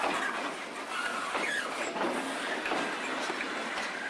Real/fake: real